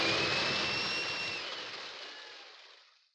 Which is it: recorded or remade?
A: recorded